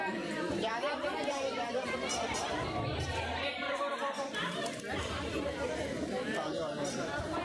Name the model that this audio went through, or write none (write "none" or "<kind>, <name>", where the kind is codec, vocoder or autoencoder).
vocoder, BigVGAN v2